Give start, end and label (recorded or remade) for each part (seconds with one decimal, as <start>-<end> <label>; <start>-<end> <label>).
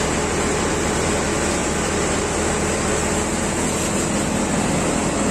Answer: 0.0-5.3 recorded